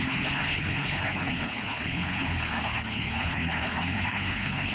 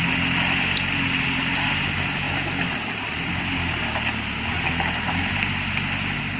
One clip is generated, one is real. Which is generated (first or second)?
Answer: first